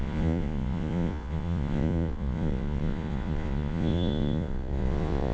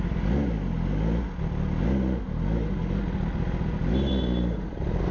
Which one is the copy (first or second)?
first